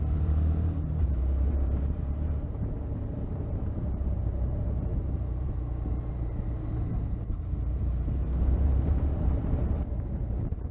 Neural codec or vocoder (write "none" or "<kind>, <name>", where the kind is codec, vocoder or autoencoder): vocoder, BigVGAN v2